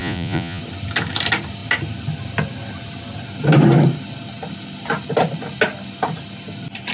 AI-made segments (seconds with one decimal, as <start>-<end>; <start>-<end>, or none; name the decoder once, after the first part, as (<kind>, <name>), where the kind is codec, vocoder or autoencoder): 0.0-0.6 (vocoder, Vocos)